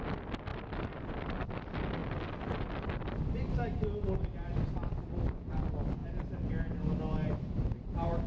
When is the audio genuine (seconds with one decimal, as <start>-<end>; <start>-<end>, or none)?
0.0-6.0; 6.5-7.2